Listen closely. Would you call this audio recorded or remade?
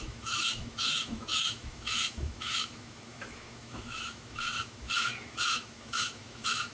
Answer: remade